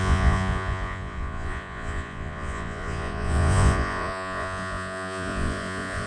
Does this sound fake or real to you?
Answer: fake